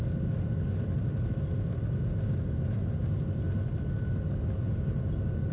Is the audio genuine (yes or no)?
yes